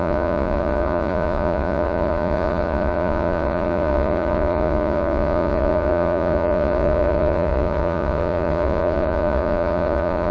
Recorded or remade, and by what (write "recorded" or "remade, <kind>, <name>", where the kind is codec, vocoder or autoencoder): remade, vocoder, Vocos